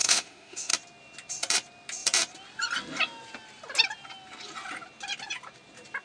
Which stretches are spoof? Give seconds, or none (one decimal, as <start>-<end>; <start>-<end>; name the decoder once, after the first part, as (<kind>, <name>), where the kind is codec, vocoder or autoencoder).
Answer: 0.0-0.7 (autoencoder, DAC-VAE)